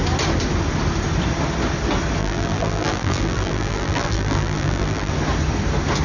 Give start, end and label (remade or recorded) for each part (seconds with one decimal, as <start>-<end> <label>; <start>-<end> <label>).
0.0-2.2 recorded; 2.2-5.1 remade; 5.1-6.0 recorded